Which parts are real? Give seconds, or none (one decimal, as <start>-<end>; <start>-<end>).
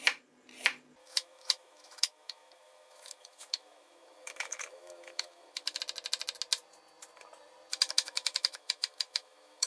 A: 0.0-1.0; 5.8-7.7